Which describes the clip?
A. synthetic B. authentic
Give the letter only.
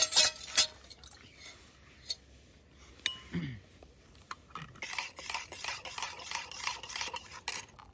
B